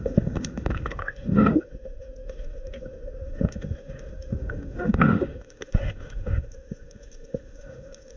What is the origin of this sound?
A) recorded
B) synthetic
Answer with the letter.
B